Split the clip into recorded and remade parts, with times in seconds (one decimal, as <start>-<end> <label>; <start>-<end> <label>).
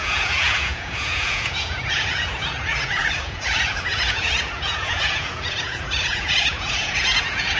0.0-7.6 remade